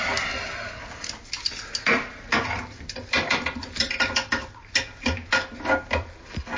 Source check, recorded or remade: recorded